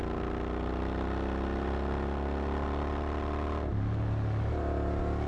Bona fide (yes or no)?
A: yes